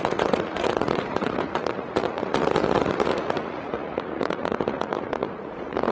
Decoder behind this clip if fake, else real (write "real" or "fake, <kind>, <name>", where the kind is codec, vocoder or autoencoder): fake, vocoder, Vocos